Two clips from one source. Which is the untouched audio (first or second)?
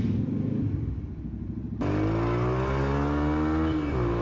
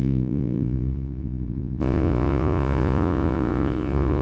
first